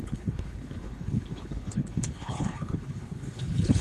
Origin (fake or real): fake